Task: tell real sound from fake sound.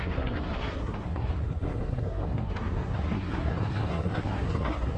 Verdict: fake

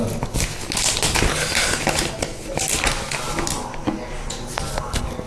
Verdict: real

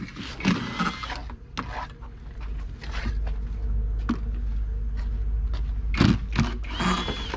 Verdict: real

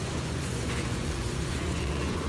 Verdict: fake